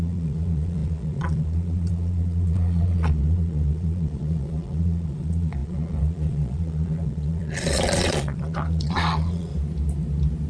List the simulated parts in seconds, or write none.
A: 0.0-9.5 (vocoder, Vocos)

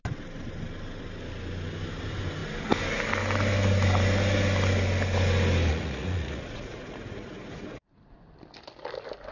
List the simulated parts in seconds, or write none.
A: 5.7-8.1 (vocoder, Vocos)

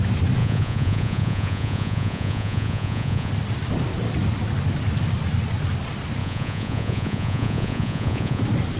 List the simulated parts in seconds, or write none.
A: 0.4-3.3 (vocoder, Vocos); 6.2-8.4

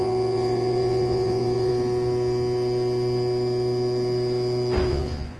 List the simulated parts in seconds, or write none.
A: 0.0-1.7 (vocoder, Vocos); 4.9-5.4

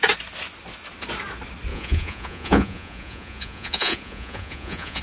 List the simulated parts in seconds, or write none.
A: 1.7-5.0 (vocoder, Vocos)

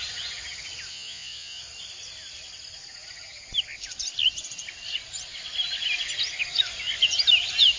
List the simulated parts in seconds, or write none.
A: 0.9-1.6 (vocoder, Vocos)

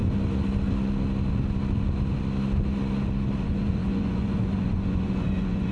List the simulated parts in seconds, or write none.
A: 3.4-5.7 (vocoder, Vocos)